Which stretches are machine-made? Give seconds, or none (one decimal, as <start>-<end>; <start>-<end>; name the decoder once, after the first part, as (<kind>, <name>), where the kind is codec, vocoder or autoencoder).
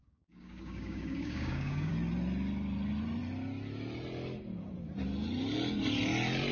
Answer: 0.0-1.9 (codec, DAC)